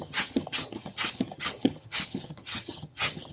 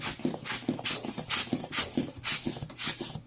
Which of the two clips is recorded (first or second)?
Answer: second